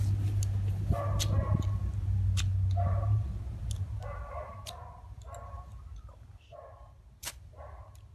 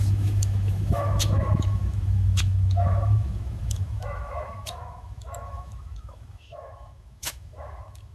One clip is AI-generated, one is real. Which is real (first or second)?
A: first